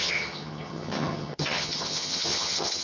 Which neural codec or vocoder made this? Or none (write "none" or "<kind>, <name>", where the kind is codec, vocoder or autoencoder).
vocoder, HiFi-GAN